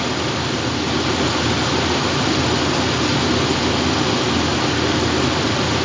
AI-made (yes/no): no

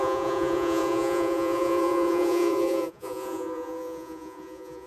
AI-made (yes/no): yes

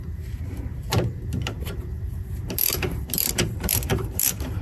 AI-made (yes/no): yes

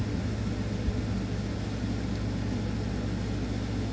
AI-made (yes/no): no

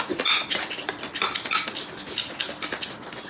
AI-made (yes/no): no